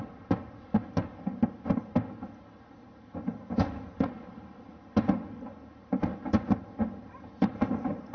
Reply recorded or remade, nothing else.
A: recorded